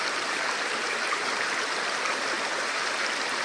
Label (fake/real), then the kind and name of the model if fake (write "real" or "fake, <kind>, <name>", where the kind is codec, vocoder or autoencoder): fake, vocoder, BigVGAN v2